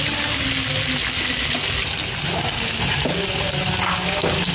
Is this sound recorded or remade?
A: recorded